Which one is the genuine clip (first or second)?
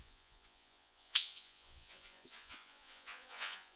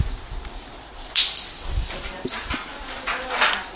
second